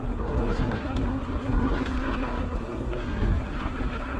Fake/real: fake